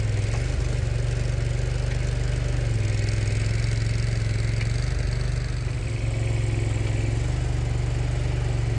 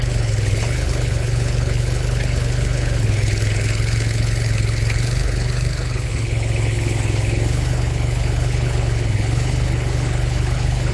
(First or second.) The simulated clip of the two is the second